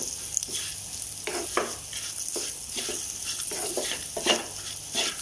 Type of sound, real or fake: real